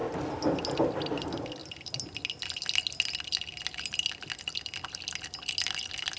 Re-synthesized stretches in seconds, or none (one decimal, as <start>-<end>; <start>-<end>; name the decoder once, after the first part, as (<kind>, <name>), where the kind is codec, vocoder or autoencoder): none